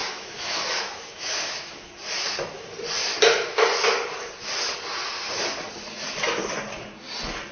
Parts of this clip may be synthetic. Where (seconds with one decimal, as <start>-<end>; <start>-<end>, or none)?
0.0-1.9